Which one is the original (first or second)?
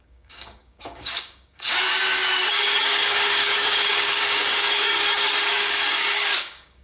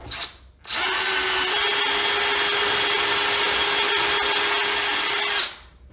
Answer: second